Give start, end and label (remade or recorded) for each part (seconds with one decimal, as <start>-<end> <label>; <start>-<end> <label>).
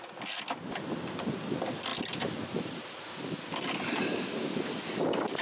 0.0-5.4 recorded